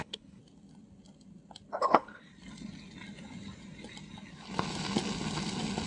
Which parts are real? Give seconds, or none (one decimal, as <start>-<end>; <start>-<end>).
0.4-1.8; 2.3-5.9